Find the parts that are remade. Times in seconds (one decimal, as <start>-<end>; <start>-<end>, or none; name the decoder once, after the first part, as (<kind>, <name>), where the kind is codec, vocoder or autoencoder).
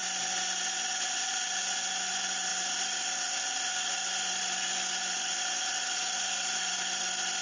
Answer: none